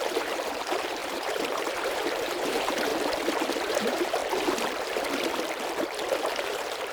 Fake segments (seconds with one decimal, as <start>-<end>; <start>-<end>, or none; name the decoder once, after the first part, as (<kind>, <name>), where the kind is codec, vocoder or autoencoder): 0.0-2.9 (vocoder, BigVGAN v2); 3.6-4.2; 6.2-6.9

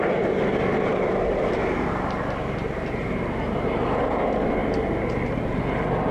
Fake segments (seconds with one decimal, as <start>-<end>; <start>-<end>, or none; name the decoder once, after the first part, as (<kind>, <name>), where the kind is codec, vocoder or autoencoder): 0.9-4.0 (vocoder, BigVGAN v2); 4.6-5.6

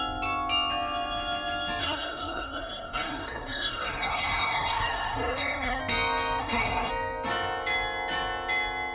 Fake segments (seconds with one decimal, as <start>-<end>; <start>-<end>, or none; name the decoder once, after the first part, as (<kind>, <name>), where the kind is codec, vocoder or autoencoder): 1.8-5.8 (codec, SNAC); 6.4-6.9